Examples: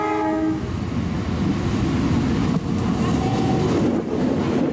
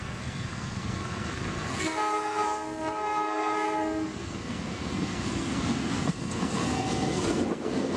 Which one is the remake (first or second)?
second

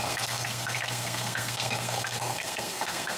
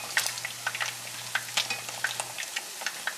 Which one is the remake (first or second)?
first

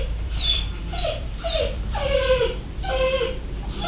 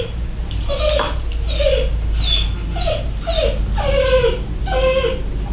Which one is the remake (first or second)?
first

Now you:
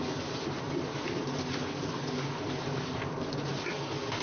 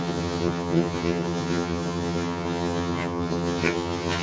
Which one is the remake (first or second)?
second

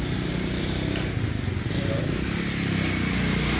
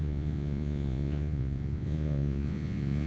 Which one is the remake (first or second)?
second